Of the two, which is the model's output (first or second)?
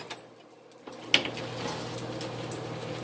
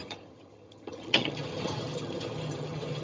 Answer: second